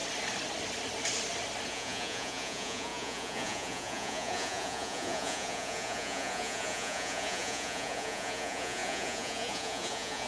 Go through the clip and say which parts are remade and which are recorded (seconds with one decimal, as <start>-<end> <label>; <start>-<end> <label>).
0.0-1.7 recorded; 1.7-10.3 remade